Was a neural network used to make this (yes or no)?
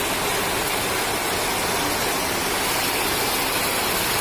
no